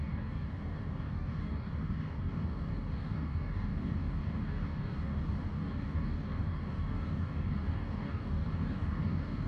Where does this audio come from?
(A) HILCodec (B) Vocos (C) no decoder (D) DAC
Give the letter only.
D